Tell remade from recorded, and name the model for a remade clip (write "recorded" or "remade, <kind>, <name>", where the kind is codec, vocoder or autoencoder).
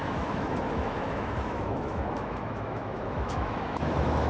remade, autoencoder, DAC-VAE